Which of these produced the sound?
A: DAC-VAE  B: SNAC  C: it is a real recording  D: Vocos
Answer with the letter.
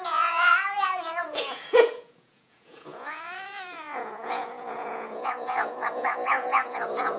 D